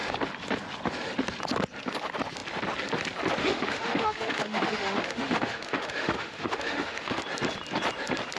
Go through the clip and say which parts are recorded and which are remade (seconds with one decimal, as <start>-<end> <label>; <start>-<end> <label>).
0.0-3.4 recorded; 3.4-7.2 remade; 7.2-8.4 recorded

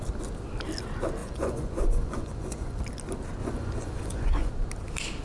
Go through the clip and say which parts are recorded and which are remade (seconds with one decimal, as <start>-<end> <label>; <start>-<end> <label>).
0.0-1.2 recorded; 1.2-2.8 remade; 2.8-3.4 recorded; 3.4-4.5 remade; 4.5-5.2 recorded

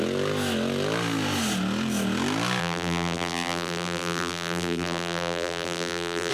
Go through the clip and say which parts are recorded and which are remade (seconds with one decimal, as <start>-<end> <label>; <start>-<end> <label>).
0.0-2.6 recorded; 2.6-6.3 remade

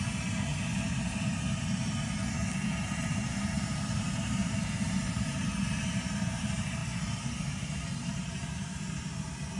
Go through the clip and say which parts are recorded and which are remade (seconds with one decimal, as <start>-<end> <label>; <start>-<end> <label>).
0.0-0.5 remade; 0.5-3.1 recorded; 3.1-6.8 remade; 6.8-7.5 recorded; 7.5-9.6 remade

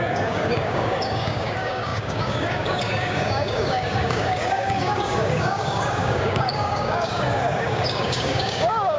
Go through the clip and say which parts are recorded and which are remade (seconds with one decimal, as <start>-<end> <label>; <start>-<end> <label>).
0.0-9.0 remade

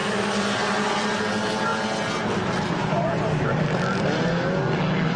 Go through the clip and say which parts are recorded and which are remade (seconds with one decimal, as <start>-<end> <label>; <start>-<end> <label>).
0.0-5.2 recorded

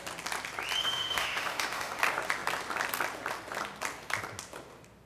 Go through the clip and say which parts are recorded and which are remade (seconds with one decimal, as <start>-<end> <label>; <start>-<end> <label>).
0.0-0.8 recorded; 0.8-2.0 remade; 2.0-5.1 recorded